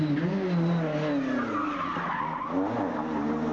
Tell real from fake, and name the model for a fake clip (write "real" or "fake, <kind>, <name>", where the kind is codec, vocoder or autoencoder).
real